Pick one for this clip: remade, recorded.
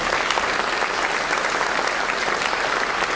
recorded